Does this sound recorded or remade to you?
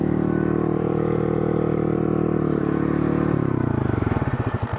remade